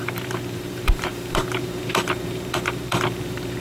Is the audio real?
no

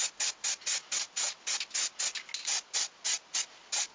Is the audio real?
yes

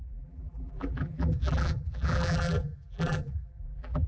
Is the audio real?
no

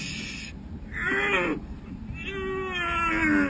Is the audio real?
yes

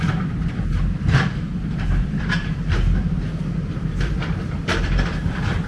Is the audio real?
no